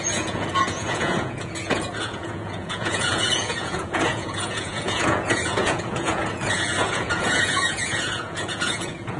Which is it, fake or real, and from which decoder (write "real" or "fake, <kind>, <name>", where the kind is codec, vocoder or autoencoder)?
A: fake, vocoder, Vocos